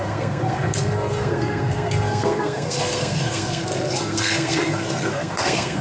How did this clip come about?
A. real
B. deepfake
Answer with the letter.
B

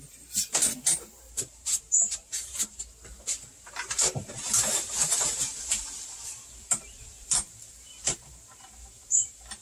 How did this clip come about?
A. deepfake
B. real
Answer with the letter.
A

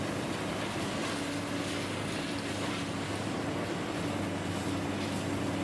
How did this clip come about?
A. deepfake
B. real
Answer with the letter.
B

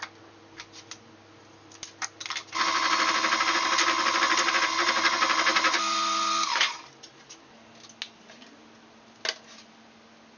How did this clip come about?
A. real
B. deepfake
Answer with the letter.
A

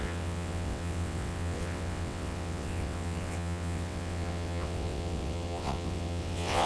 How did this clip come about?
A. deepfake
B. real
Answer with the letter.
A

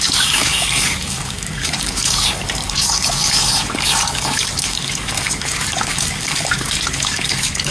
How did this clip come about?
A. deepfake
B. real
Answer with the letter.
A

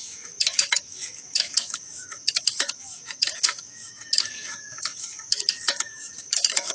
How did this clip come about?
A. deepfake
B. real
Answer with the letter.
A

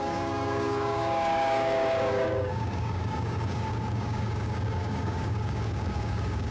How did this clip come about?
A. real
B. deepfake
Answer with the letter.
B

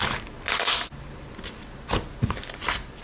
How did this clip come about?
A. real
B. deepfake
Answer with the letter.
A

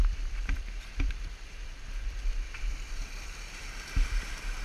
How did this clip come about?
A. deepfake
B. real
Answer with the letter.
A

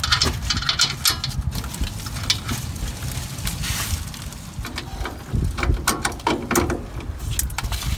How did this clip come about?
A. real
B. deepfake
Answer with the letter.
A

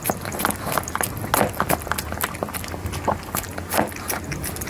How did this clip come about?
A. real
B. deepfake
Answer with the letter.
A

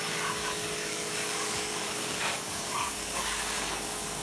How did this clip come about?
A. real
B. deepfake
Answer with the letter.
B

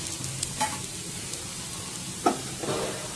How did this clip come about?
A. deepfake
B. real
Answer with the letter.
B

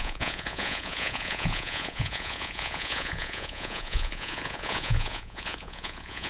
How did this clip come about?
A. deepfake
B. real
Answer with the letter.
A